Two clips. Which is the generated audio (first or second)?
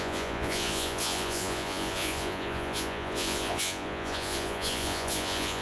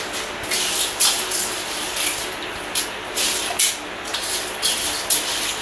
first